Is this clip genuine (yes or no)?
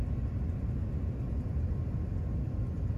yes